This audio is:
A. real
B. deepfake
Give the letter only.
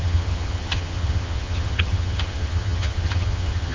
B